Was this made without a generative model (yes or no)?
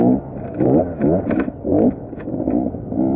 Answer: yes